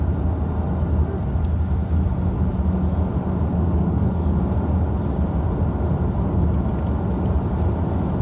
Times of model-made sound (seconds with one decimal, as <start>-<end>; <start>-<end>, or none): 3.5-4.4